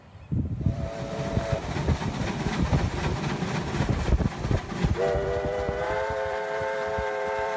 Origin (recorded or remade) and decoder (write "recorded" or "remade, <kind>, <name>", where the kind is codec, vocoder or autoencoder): remade, vocoder, BigVGAN v2